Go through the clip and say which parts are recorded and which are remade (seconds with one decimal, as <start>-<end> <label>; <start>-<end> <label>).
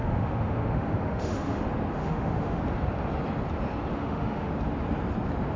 0.0-1.6 remade; 1.6-2.0 recorded; 2.0-2.6 remade; 2.6-3.9 recorded; 3.9-4.5 remade; 4.5-5.6 recorded